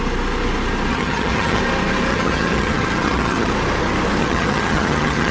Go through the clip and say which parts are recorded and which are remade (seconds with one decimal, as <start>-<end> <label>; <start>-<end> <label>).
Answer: 0.0-0.9 recorded; 0.9-1.6 remade; 1.6-2.1 recorded; 2.1-3.5 remade; 3.5-4.2 recorded; 4.2-5.3 remade